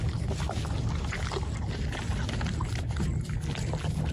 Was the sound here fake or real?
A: real